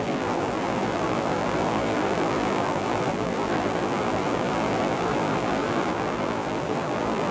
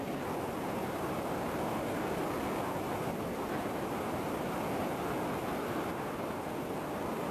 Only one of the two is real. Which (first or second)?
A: second